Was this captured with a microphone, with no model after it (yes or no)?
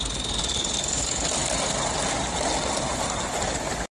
yes